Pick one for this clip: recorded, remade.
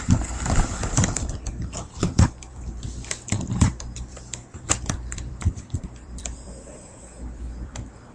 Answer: remade